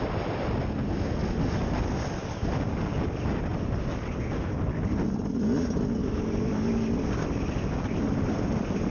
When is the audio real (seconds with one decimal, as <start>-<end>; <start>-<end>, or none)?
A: 0.0-8.9